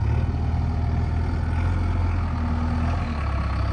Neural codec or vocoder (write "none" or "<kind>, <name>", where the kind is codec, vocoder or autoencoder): none